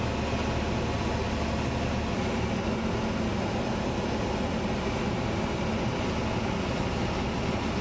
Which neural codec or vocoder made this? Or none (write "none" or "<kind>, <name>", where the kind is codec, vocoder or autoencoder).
none